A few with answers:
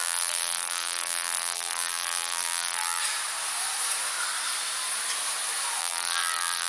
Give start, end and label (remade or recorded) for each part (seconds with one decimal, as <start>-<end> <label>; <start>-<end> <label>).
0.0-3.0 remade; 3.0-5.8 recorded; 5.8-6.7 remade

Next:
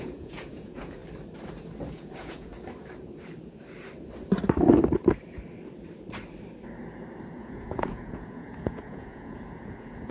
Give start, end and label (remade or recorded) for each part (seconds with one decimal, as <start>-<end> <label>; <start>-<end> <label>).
0.0-1.0 remade; 1.0-1.9 recorded; 1.9-2.5 remade; 2.5-7.4 recorded; 7.4-10.1 remade

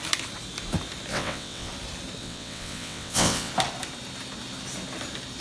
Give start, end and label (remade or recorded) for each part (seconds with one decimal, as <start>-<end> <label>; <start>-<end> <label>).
0.0-1.1 recorded; 1.1-1.7 remade; 1.7-2.2 recorded; 2.2-3.5 remade; 3.5-5.4 recorded